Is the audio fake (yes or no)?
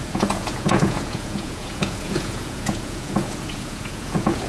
yes